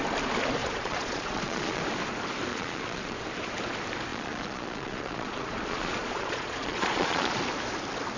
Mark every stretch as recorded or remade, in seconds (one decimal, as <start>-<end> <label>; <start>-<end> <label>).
0.0-0.6 recorded; 0.6-1.8 remade; 1.8-2.5 recorded; 2.5-3.2 remade; 3.2-4.1 recorded; 4.1-7.4 remade; 7.4-8.2 recorded